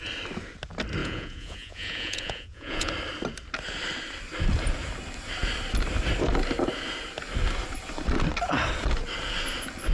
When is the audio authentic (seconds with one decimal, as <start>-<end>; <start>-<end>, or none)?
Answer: 0.0-1.0; 2.9-9.9